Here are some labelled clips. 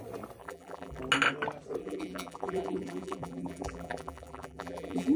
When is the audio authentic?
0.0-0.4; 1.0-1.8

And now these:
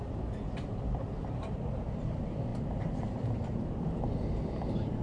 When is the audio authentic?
none

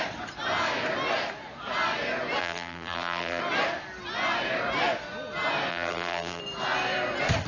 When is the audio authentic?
0.0-2.4; 3.4-5.7; 6.4-7.5

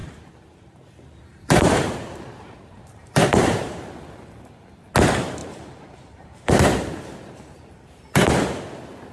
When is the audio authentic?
3.9-5.4; 8.3-9.1

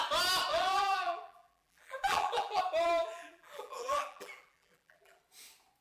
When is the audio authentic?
0.0-0.5; 2.6-3.0; 5.2-5.8